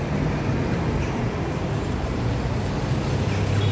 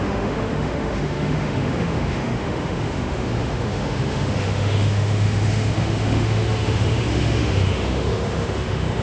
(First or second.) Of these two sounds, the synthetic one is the second